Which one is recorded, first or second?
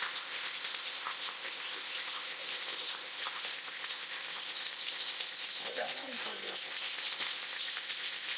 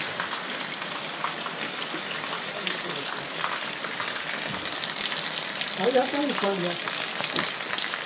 second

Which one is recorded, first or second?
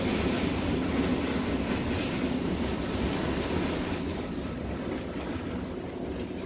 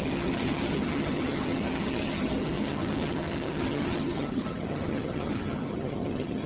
first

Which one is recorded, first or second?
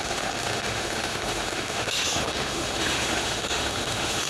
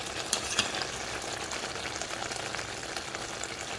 second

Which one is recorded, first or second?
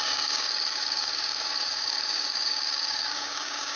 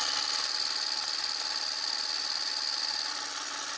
second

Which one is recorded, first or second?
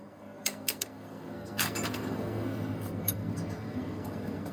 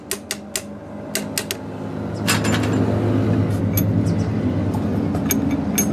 second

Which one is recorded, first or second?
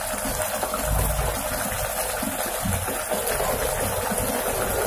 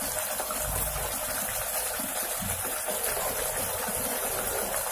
first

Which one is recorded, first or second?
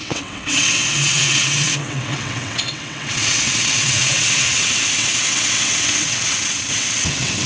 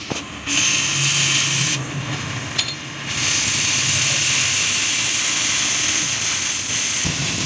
second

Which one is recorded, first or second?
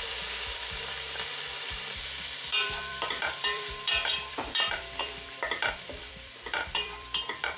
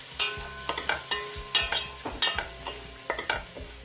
second